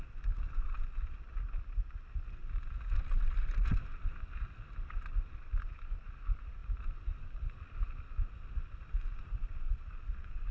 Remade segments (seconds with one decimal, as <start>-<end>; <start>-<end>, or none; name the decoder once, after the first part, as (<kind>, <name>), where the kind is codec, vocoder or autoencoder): none